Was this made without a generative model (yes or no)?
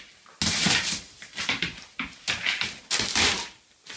yes